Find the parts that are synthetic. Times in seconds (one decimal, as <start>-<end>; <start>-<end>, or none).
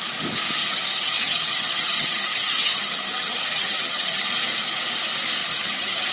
0.6-4.3; 5.4-6.1